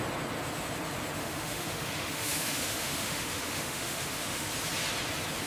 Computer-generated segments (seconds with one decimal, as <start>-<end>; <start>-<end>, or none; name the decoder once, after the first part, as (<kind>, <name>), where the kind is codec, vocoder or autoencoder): 1.2-4.5 (autoencoder, DAC-VAE)